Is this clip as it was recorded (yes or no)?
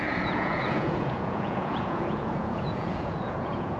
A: no